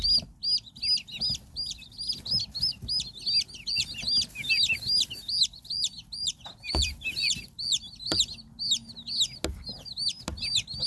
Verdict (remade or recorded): recorded